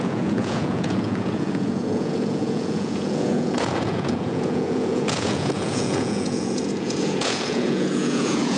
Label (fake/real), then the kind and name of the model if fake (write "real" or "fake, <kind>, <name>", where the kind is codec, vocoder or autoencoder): fake, vocoder, Vocos